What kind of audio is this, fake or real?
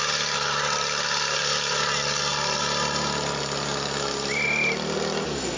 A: real